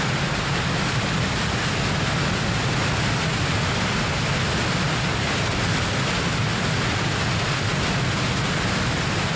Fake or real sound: real